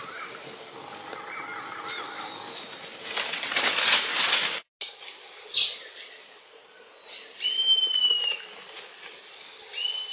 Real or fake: real